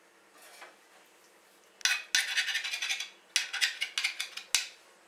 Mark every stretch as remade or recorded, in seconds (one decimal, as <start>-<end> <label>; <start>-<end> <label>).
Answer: 0.0-5.1 recorded